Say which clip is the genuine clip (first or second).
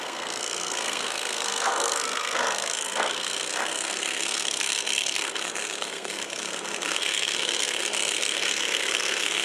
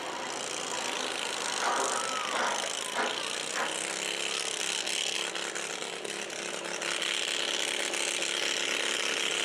second